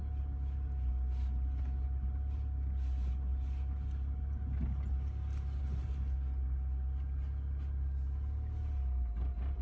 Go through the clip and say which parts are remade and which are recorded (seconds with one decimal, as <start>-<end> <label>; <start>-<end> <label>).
0.0-9.6 recorded